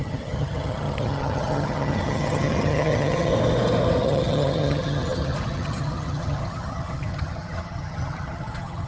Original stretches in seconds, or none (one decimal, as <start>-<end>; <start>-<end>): 3.3-4.0